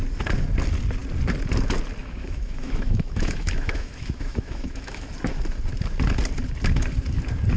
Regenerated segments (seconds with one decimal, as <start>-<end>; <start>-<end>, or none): 2.0-5.1